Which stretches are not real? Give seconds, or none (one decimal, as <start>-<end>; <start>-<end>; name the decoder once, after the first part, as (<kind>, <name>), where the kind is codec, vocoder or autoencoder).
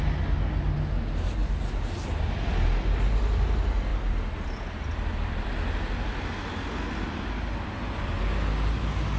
1.4-2.0 (vocoder, BigVGAN v2); 3.9-5.5